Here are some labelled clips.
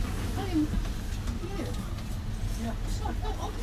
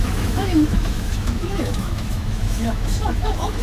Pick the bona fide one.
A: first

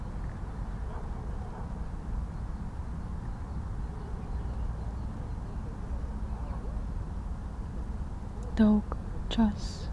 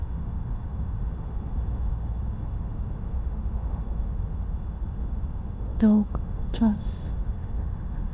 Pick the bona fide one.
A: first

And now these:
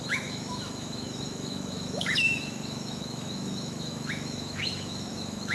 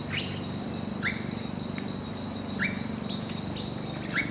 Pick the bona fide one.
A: second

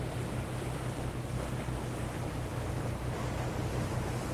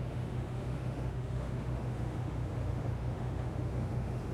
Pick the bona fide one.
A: first